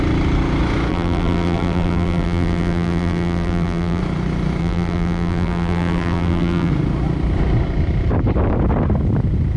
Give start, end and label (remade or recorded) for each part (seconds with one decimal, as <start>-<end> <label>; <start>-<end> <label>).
0.0-0.9 recorded; 0.9-4.0 remade; 4.0-4.6 recorded; 4.6-6.7 remade; 6.7-9.6 recorded